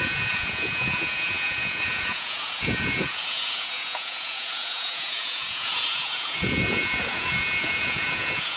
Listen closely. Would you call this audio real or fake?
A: fake